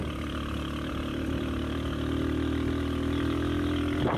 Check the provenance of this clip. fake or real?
real